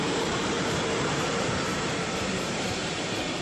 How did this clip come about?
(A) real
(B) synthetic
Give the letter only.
B